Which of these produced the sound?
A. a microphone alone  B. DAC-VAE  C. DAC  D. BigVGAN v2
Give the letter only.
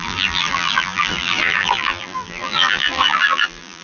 D